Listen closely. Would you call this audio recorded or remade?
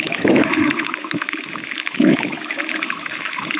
remade